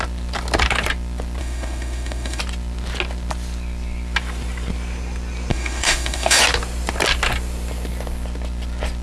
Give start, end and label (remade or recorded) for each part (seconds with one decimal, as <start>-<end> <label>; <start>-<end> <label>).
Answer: 0.0-1.4 recorded; 1.4-2.4 remade; 2.4-5.5 recorded; 5.5-6.4 remade; 6.4-9.0 recorded